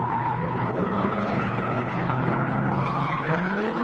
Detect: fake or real fake